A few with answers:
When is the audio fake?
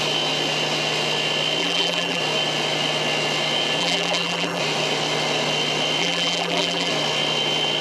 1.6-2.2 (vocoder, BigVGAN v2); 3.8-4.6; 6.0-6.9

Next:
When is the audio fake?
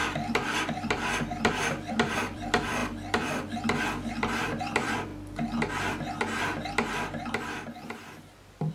0.0-5.1 (vocoder, BigVGAN v2)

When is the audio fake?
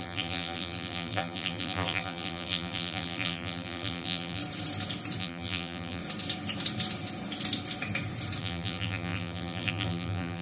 0.0-4.4 (vocoder, BigVGAN v2); 5.2-6.0; 8.4-10.4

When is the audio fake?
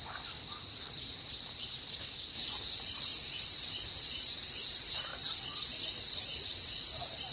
0.0-3.1 (vocoder, BigVGAN v2); 4.1-5.1; 5.7-7.3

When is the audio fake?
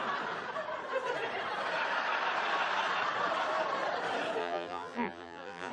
4.4-5.7 (vocoder, BigVGAN v2)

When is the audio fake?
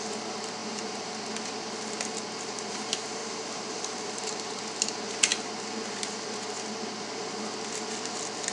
0.6-1.2 (vocoder, BigVGAN v2); 3.2-4.6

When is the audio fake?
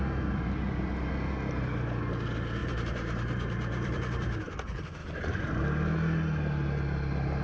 2.6-4.4 (vocoder, BigVGAN v2); 5.0-5.6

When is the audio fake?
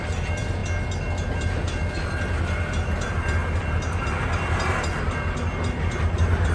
0.0-0.6 (vocoder, BigVGAN v2); 1.3-6.5